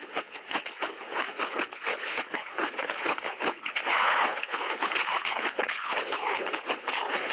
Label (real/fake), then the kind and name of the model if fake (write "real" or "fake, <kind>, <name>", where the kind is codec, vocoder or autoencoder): fake, codec, HILCodec